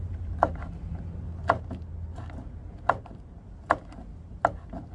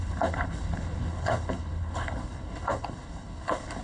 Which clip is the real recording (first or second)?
first